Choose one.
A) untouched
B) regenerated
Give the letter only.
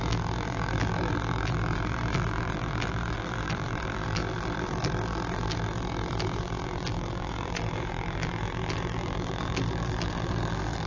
B